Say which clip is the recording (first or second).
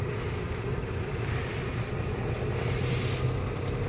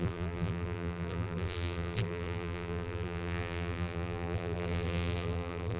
first